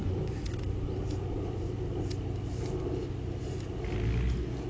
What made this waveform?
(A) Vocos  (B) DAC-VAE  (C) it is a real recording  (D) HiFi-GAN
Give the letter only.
C